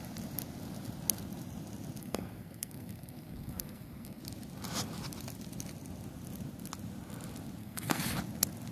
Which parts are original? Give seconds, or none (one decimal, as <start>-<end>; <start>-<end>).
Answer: 0.0-2.0; 4.2-7.6; 8.2-8.7